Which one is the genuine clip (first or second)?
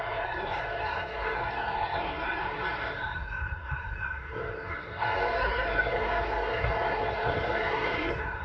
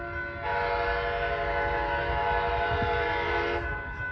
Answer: second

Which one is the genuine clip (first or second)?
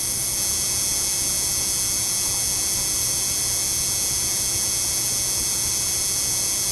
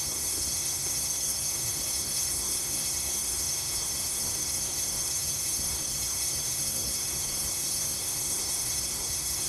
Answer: first